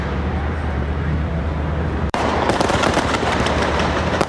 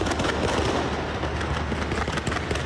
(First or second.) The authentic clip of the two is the second